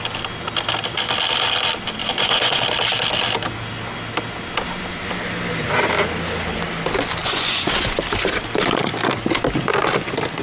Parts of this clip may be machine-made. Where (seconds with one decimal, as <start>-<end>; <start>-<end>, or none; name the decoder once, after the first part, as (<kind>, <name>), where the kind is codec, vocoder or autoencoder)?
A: 2.0-2.6 (vocoder, Vocos); 7.2-8.0